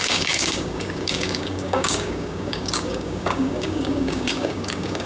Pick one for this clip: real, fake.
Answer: fake